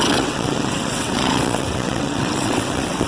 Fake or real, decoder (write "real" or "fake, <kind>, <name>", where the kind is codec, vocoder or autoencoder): fake, vocoder, WaveNeXt